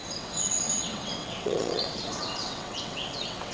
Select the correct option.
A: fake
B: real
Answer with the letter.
A